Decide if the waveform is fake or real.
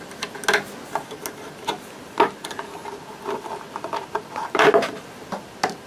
real